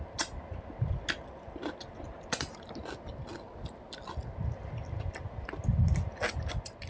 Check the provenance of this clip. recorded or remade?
recorded